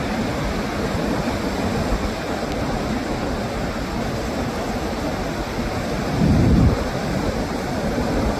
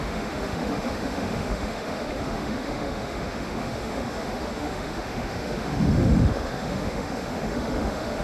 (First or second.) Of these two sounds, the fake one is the second